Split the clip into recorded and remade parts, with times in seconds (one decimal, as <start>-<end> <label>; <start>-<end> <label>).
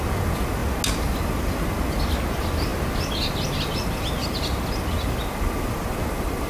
0.0-6.5 recorded